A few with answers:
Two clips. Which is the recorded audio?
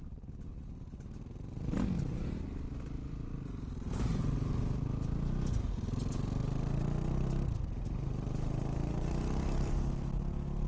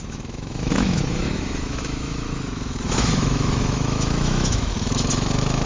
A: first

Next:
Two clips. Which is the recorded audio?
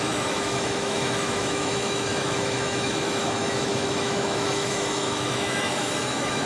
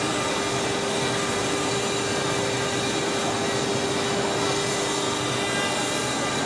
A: second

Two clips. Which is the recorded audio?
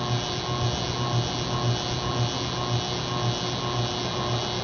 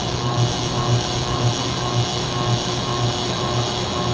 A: first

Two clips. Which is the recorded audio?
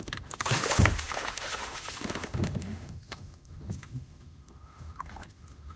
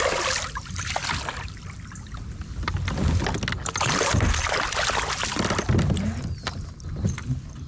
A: second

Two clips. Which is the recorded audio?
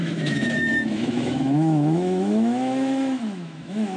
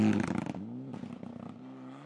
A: second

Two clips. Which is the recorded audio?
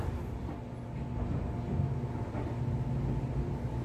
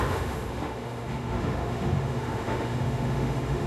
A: first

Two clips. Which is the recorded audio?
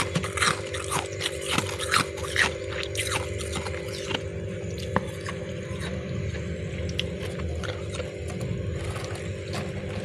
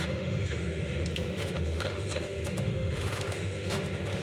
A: first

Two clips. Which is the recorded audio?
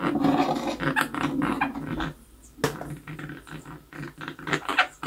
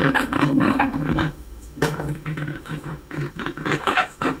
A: first